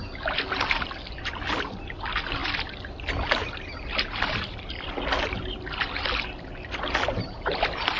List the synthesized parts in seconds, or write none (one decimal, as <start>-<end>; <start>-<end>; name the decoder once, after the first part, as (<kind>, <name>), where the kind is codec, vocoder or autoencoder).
none